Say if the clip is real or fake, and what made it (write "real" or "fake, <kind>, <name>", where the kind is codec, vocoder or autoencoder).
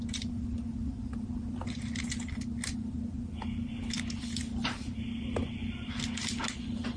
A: real